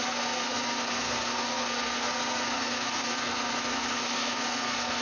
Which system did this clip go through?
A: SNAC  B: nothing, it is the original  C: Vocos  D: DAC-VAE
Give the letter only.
A